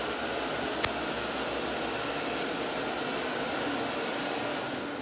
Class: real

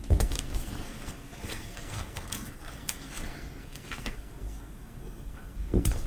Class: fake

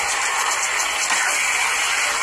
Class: real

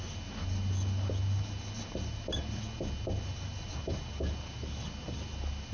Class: real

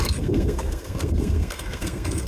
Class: fake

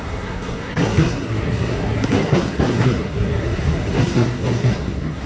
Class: fake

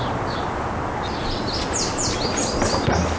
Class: real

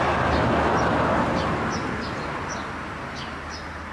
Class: real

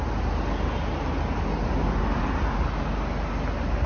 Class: real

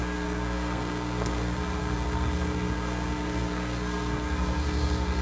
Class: fake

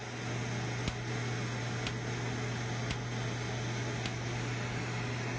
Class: real